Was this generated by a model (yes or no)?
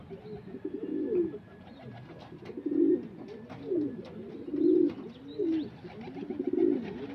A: no